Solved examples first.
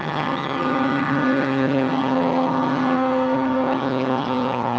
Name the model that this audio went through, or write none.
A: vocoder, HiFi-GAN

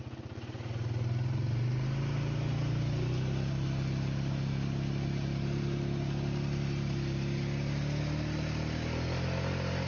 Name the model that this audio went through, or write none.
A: none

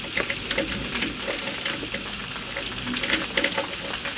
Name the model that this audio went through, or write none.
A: none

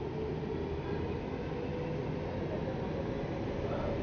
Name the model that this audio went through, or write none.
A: none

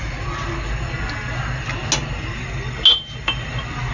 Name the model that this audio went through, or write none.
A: none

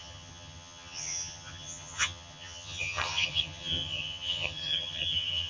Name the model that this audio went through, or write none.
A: vocoder, HiFi-GAN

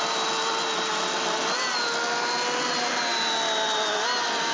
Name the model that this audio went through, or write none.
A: none